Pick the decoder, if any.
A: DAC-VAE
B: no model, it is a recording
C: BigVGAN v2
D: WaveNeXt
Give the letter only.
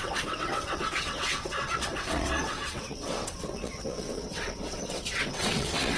D